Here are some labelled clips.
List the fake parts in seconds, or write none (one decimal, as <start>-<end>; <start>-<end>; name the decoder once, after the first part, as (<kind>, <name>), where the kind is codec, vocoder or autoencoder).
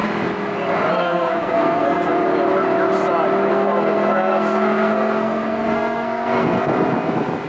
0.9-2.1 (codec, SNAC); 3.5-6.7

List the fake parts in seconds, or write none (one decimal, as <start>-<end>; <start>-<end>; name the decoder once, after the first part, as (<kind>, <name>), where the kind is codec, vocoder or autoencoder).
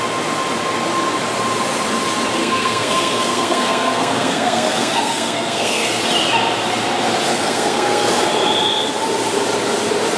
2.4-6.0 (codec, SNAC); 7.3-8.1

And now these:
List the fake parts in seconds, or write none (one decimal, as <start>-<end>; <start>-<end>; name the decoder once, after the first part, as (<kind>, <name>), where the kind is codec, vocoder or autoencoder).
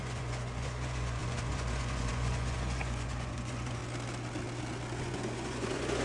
0.0-3.8 (vocoder, Vocos); 5.0-6.0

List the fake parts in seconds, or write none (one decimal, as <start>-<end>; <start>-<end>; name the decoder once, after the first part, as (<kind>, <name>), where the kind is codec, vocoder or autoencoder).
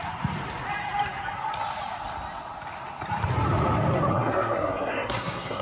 4.1-5.6 (codec, SNAC)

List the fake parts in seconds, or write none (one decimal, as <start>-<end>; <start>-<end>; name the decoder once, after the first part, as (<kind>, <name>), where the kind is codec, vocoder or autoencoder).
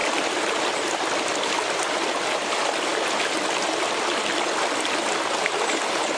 none